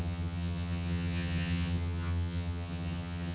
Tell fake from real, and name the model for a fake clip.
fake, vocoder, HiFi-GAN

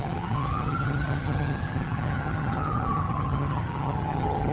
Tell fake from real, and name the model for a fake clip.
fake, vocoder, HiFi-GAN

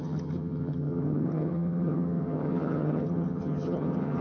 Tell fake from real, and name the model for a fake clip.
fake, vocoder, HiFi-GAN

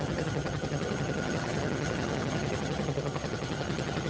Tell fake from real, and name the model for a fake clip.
fake, vocoder, HiFi-GAN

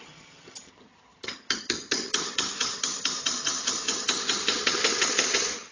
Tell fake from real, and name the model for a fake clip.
fake, vocoder, HiFi-GAN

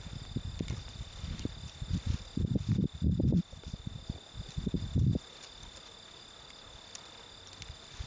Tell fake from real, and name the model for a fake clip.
real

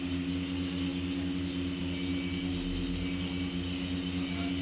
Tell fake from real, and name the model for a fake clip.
real